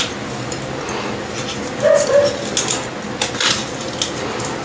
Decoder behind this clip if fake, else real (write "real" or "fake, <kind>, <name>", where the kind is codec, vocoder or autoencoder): real